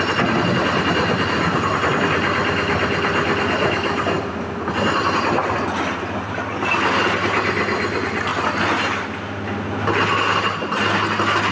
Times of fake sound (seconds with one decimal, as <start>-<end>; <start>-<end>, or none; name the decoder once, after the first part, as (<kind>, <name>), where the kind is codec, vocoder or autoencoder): none